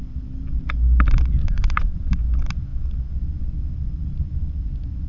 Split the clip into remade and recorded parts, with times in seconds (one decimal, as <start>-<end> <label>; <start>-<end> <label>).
0.0-1.4 recorded; 1.4-2.1 remade; 2.1-5.1 recorded